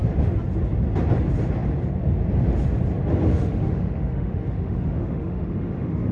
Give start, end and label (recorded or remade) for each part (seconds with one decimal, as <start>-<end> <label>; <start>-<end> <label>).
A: 0.0-3.3 recorded; 3.3-6.1 remade